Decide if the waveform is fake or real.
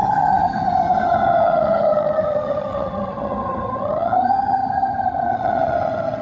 fake